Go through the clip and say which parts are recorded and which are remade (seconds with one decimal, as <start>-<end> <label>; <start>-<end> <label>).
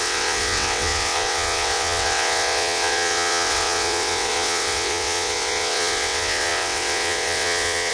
0.0-7.9 remade